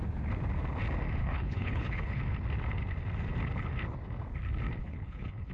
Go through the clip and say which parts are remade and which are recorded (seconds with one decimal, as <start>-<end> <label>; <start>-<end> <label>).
0.0-1.2 recorded; 1.2-2.2 remade; 2.2-4.8 recorded; 4.8-5.5 remade